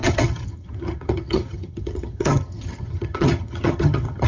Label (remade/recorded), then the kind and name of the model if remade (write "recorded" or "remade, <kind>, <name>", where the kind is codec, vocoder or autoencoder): remade, vocoder, HiFi-GAN